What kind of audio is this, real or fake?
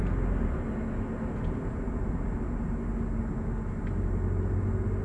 real